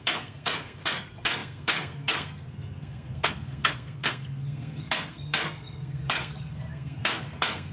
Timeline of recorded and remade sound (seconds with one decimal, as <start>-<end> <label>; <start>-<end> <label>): 0.0-7.7 remade